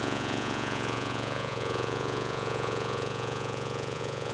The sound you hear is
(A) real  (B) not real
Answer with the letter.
B